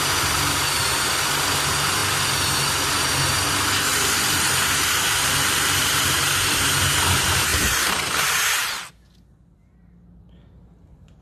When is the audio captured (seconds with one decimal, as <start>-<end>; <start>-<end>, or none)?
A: 0.0-3.9; 6.6-7.5; 8.2-11.2